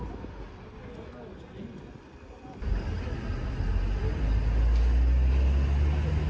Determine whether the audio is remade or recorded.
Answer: recorded